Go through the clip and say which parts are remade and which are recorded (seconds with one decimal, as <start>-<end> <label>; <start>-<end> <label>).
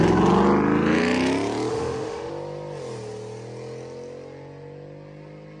0.0-1.7 recorded; 1.7-2.3 remade; 2.3-5.6 recorded